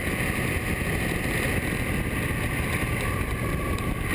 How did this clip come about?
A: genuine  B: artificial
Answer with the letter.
A